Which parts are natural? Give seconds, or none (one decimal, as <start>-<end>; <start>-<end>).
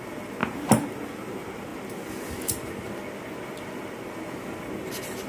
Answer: 0.0-5.3